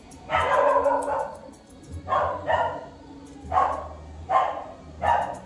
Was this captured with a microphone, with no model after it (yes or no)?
yes